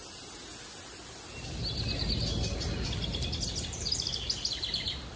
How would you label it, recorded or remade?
recorded